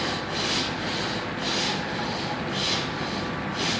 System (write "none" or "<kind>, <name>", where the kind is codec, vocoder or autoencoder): none